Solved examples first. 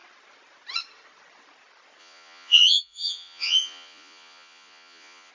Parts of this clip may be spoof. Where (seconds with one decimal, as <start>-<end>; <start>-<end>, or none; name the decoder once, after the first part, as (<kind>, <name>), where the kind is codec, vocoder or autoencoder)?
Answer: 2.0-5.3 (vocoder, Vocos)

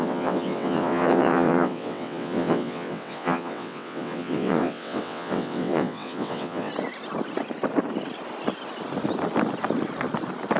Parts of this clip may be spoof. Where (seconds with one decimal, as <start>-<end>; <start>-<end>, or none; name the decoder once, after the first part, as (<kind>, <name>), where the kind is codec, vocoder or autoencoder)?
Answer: 0.0-6.7 (vocoder, WaveNeXt)

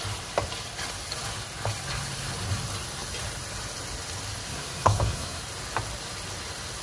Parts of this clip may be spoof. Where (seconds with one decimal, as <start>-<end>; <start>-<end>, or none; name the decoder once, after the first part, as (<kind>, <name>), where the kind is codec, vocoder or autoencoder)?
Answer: 4.5-5.4 (codec, SNAC)